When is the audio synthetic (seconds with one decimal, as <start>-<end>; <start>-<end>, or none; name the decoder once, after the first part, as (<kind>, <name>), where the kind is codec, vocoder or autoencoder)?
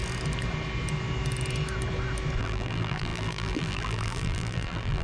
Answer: 2.4-5.0 (vocoder, BigVGAN v2)